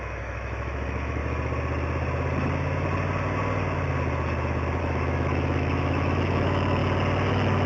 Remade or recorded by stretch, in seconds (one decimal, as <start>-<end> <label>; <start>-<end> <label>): 0.0-1.2 remade; 1.2-4.8 recorded; 4.8-6.8 remade; 6.8-7.3 recorded; 7.3-7.7 remade